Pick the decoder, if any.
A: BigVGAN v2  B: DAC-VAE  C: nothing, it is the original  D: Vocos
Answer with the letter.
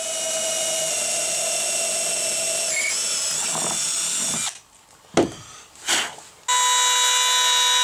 C